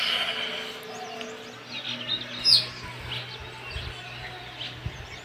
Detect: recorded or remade recorded